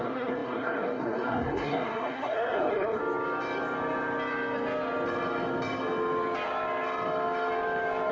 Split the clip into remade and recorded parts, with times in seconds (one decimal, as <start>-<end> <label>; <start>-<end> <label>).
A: 0.0-3.0 remade; 3.0-8.1 recorded